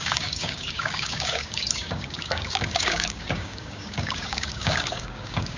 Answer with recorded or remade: remade